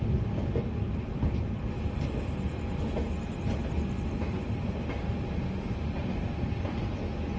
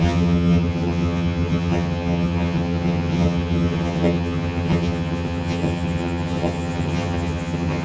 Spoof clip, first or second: second